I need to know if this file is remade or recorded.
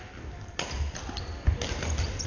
recorded